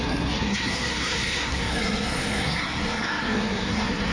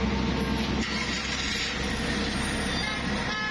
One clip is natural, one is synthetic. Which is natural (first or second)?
second